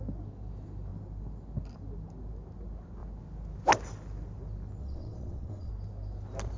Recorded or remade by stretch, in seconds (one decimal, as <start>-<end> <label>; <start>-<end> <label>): 0.0-4.8 recorded; 4.8-5.7 remade; 5.7-6.6 recorded